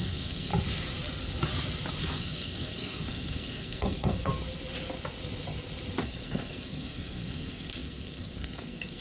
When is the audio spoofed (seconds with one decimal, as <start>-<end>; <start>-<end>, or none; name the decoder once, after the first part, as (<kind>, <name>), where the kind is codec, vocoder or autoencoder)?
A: 0.0-0.5 (codec, SNAC); 2.0-4.3; 6.0-9.0